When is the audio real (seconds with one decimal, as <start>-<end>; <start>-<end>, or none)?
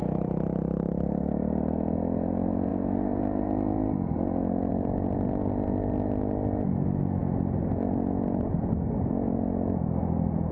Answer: 0.0-10.5